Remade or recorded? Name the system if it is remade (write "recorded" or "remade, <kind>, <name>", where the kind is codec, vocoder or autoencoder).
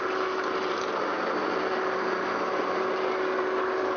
recorded